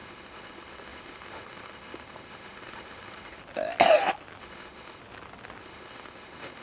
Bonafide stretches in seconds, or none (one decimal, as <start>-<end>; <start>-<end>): 3.4-4.4; 5.0-5.6